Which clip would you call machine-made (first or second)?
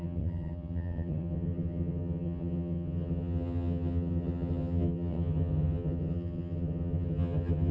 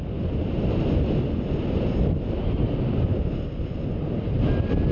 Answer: first